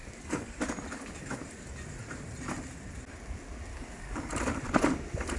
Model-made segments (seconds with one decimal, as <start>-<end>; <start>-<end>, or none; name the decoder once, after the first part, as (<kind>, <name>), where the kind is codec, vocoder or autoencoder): 0.0-0.6 (codec, DAC); 3.7-4.3